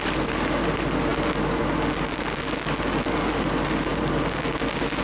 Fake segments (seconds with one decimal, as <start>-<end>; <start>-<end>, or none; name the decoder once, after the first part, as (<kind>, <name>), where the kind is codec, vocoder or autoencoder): none